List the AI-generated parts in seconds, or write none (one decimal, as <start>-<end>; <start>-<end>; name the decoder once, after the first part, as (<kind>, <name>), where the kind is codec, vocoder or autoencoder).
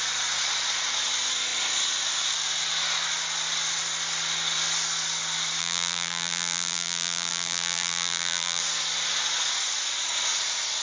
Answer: 5.6-8.6 (vocoder, BigVGAN v2)